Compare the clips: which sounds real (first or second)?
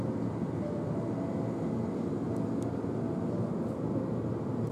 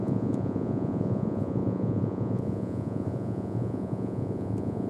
first